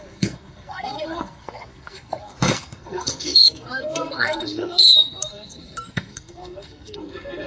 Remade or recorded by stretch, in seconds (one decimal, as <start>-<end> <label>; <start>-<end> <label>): 0.0-7.5 remade